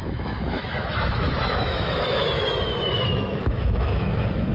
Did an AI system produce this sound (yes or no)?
yes